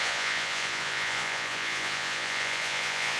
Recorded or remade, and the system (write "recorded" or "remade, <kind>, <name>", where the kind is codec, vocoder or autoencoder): remade, vocoder, Vocos